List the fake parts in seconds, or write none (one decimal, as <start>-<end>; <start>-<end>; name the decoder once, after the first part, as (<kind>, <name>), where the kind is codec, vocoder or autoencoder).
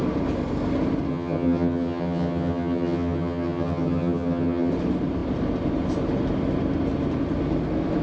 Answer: 1.1-4.7 (vocoder, HiFi-GAN)